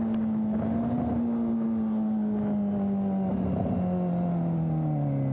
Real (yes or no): yes